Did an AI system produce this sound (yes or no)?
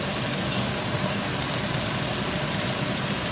no